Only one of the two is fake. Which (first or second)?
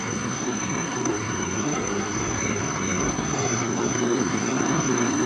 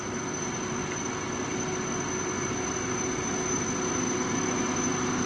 first